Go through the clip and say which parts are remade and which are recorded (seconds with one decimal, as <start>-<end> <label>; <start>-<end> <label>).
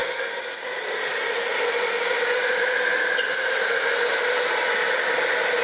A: 0.0-5.6 recorded